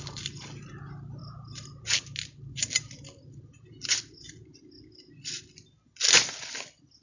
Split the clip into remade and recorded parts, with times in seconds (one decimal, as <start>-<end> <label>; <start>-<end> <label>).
0.0-7.0 recorded